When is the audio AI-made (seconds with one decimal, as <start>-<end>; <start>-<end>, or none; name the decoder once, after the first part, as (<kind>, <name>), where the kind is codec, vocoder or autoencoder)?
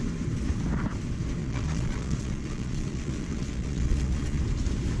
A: 1.4-4.4 (vocoder, Vocos)